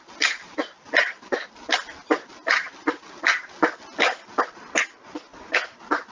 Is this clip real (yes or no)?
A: yes